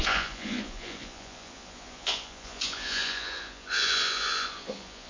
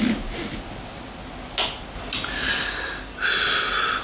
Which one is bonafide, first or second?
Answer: second